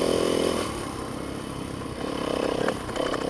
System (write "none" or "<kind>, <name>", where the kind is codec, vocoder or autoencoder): vocoder, BigVGAN v2